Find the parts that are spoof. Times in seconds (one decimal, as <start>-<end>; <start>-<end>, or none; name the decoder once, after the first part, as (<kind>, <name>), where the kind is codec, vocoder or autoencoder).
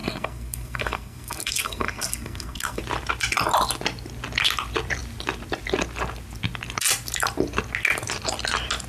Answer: 0.0-2.8 (codec, SNAC)